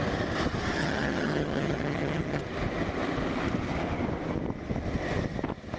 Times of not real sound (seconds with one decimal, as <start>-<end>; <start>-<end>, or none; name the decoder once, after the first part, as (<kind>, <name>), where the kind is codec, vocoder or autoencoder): 0.8-2.4 (vocoder, HiFi-GAN)